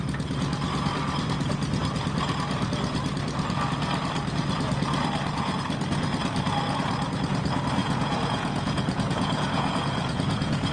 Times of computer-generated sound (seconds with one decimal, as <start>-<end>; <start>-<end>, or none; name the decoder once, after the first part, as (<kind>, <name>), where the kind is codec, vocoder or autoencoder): 7.8-10.7 (vocoder, Vocos)